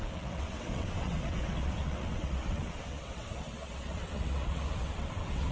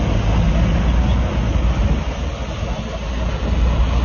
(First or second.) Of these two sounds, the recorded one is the second